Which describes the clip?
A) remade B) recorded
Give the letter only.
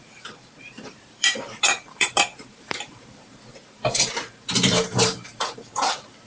A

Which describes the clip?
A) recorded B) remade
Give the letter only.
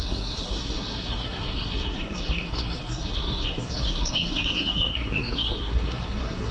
B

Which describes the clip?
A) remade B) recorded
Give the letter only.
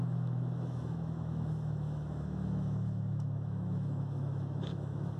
A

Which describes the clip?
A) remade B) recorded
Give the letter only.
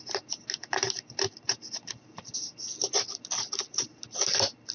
B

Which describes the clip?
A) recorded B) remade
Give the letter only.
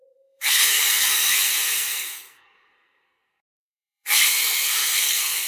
B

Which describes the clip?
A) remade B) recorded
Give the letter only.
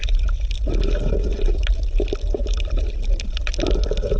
B